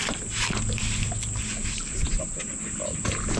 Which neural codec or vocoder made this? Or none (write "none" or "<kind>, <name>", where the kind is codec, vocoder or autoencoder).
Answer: none